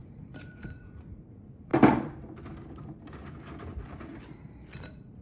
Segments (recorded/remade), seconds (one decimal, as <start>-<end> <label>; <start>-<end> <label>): 0.0-1.7 remade; 1.7-4.8 recorded; 4.8-5.2 remade